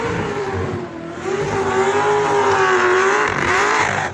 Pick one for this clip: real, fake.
fake